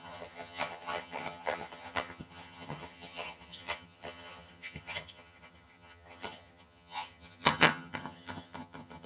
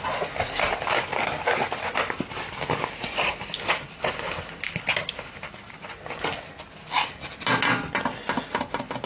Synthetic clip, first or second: first